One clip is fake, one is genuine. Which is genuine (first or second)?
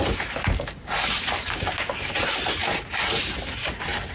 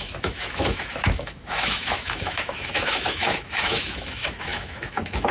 first